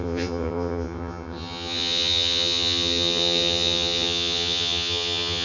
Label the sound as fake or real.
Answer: fake